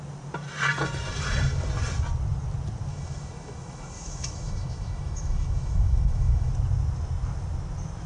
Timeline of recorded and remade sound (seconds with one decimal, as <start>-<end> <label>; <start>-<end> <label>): 0.0-2.9 recorded; 2.9-6.5 remade; 6.5-8.1 recorded